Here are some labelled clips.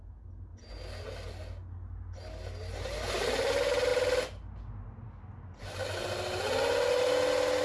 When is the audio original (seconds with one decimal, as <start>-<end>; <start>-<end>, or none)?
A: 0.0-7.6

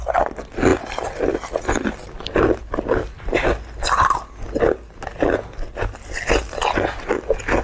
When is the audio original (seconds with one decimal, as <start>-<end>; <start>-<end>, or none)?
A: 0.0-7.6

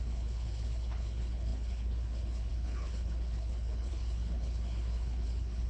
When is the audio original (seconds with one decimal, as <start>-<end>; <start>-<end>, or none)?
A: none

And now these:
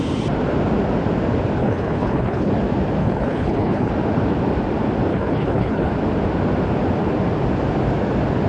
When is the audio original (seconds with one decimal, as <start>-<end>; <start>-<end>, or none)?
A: 0.0-1.6; 2.5-3.0; 3.9-5.1; 5.9-8.5